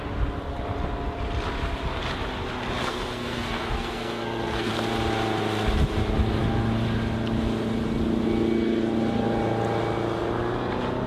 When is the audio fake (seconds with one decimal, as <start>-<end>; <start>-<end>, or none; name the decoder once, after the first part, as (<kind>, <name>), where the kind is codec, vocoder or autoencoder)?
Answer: 2.8-4.7 (codec, SNAC)